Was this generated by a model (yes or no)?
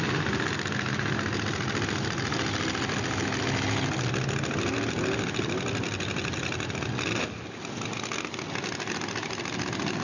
no